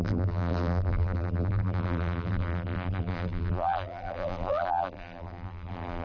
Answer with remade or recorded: remade